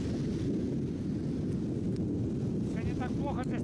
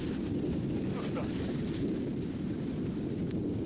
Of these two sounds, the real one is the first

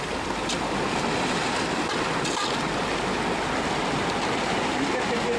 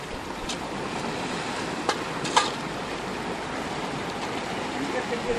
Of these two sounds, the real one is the first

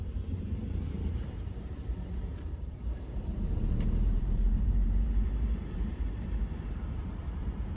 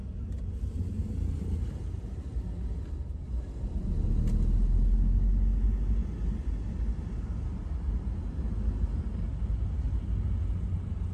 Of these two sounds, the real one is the second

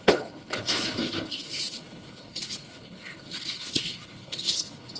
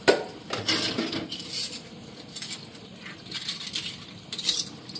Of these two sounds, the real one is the second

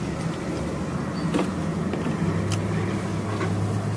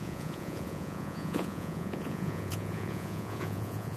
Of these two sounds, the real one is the first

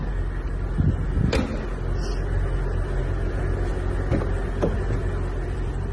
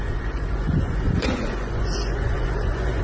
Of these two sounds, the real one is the first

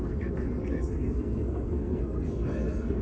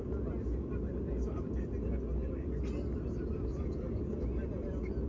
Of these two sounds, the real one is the second